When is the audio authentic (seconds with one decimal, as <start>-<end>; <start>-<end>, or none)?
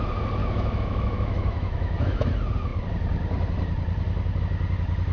0.0-0.4; 2.3-5.1